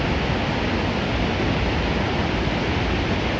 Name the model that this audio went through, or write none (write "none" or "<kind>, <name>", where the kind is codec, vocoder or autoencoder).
none